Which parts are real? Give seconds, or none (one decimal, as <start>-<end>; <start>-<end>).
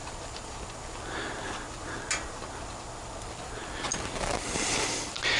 0.0-5.4